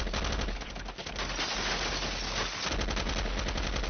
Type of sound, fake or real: real